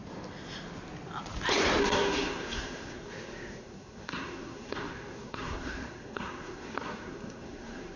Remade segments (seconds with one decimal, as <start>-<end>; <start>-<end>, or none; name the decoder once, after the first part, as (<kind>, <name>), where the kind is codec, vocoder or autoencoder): 1.8-8.0 (codec, SNAC)